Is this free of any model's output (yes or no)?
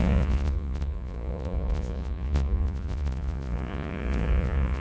no